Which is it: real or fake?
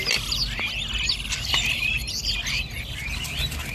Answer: real